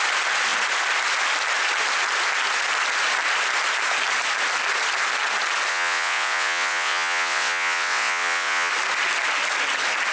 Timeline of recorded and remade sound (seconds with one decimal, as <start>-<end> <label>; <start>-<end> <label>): 0.0-5.7 recorded; 5.7-8.7 remade; 8.7-10.1 recorded